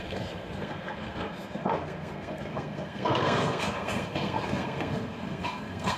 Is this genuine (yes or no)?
no